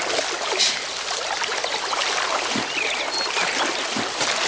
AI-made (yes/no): no